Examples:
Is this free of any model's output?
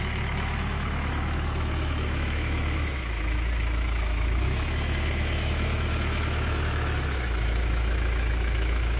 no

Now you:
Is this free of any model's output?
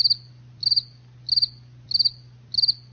yes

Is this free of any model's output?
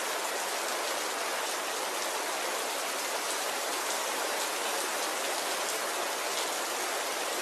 yes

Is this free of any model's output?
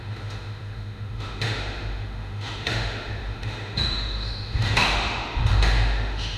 no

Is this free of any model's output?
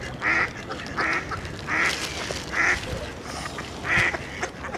yes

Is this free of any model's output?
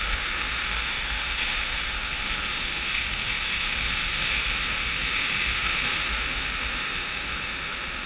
no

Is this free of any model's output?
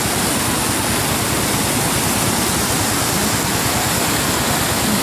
yes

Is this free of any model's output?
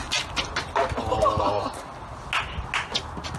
yes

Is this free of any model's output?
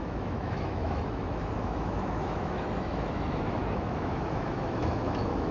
no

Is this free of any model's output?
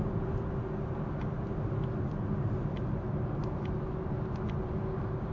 yes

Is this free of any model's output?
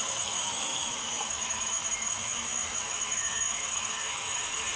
no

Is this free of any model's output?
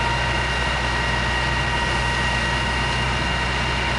yes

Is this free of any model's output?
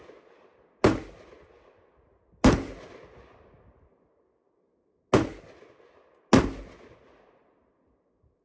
yes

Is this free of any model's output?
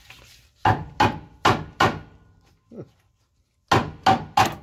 yes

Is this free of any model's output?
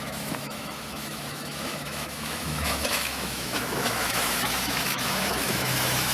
no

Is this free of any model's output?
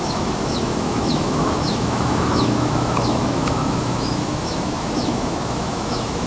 no